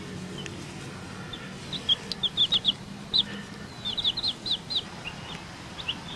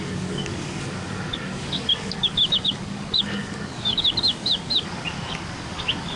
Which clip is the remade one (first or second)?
second